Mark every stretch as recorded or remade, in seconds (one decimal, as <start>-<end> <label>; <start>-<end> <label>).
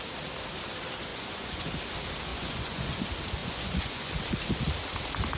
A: 0.0-1.1 recorded; 1.1-1.7 remade; 1.7-2.3 recorded; 2.3-3.0 remade; 3.0-3.4 recorded; 3.4-4.1 remade; 4.1-5.4 recorded